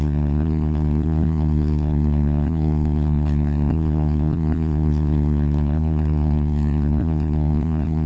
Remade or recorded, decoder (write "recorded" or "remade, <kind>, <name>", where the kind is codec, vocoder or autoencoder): remade, codec, SNAC